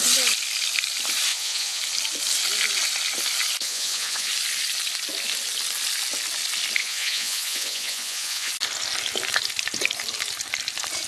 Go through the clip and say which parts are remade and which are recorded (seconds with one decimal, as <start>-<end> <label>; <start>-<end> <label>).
0.0-1.3 recorded; 1.3-1.8 remade; 1.8-3.6 recorded; 3.6-4.3 remade; 4.3-6.8 recorded; 6.8-8.5 remade; 8.5-11.1 recorded

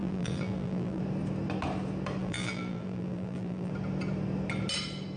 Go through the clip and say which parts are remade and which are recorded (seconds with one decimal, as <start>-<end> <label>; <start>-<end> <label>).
0.0-1.0 remade; 1.0-2.2 recorded; 2.2-3.7 remade; 3.7-5.2 recorded